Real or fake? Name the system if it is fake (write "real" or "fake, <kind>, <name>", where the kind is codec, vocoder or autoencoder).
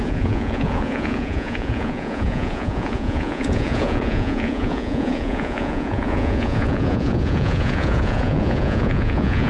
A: fake, vocoder, Vocos